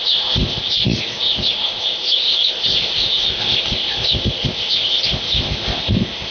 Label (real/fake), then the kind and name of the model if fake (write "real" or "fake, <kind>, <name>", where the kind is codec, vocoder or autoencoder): fake, codec, ZipCodec